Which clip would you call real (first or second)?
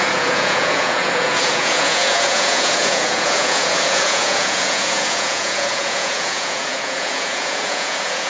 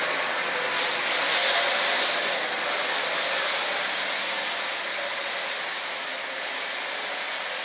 second